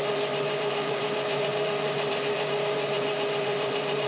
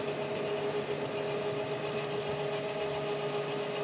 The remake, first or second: first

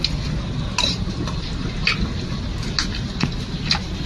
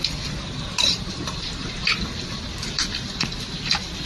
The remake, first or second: second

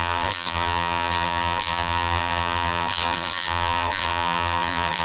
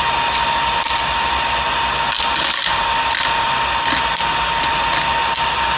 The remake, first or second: first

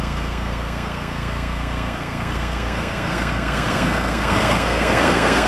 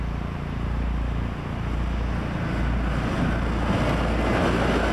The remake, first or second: first